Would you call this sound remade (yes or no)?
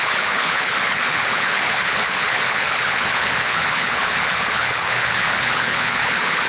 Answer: yes